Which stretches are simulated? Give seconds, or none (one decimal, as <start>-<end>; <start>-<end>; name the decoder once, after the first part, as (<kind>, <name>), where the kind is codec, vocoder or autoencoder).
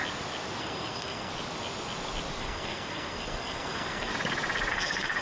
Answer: 0.6-1.3 (codec, SNAC); 2.4-4.1; 4.7-5.2